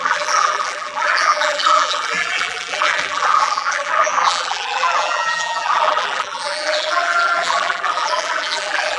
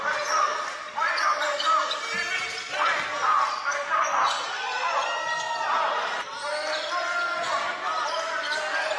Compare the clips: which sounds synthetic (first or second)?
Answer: first